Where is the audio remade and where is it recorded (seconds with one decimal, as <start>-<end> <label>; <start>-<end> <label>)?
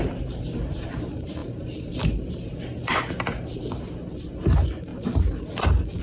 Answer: 0.0-2.7 remade; 2.7-3.4 recorded; 3.4-4.9 remade; 4.9-6.0 recorded